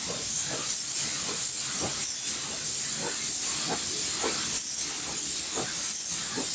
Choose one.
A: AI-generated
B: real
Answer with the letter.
B